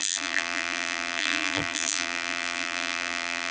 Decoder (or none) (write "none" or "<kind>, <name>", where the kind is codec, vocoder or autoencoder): vocoder, BigVGAN v2